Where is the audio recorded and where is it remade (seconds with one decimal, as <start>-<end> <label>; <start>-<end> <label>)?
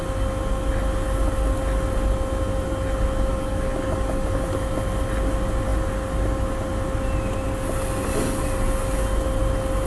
0.0-3.3 recorded; 3.3-4.5 remade; 4.5-9.9 recorded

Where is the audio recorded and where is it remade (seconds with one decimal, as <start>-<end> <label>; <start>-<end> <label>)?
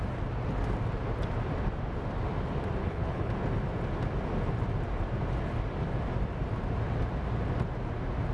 0.0-2.8 recorded; 2.8-3.3 remade; 3.3-8.3 recorded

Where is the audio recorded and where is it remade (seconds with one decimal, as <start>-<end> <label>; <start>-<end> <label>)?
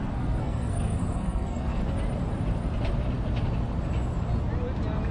0.0-1.8 remade; 1.8-5.1 recorded